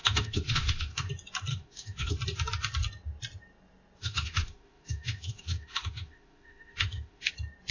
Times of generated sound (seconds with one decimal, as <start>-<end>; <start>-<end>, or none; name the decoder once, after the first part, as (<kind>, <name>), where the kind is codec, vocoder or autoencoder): 0.0-1.1 (autoencoder, DAC-VAE); 1.5-2.2; 4.0-7.3